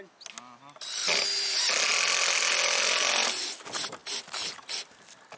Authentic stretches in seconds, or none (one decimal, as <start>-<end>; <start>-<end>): 0.0-5.4